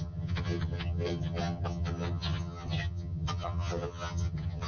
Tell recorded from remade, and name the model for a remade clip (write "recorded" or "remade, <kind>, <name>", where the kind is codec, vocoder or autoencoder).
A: remade, vocoder, HiFi-GAN